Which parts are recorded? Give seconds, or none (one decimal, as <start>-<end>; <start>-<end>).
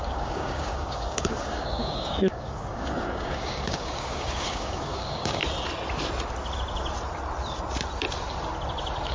5.4-9.1